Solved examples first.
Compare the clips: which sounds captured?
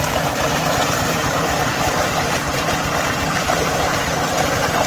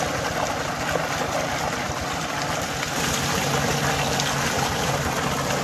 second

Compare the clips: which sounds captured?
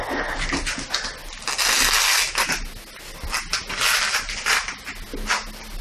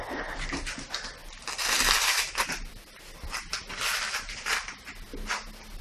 first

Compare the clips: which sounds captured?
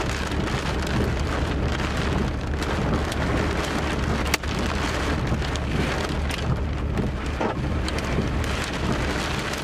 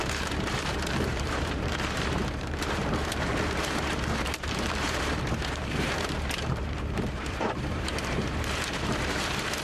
first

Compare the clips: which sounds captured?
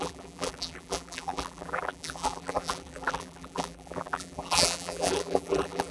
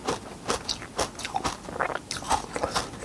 second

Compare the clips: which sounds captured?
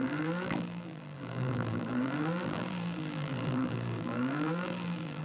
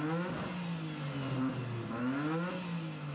second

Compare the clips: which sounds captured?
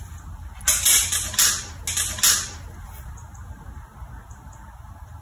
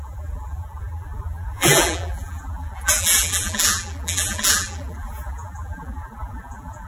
first